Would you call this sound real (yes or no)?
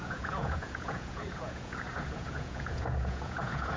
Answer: no